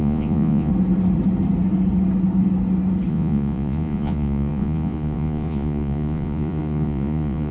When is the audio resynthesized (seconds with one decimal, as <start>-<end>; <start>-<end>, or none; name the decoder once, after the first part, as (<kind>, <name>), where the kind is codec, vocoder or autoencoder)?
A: 0.0-0.7 (vocoder, Vocos); 3.1-7.5